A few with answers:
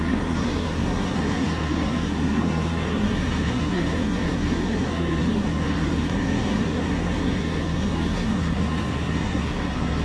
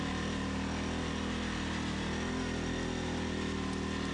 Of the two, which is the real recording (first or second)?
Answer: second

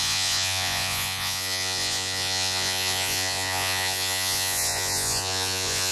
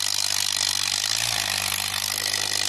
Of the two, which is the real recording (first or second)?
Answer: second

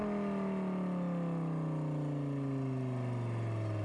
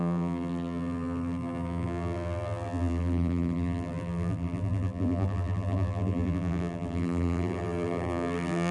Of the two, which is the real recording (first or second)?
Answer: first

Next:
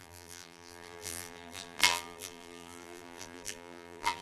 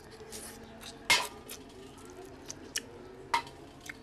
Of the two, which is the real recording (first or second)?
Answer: second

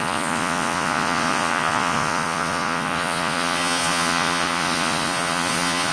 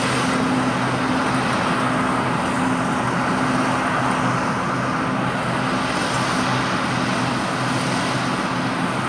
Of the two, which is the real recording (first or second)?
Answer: second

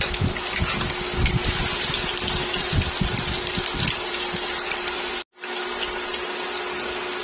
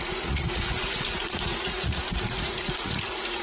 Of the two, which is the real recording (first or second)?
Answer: first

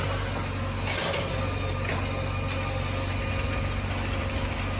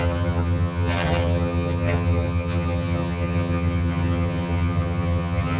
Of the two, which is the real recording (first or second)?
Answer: first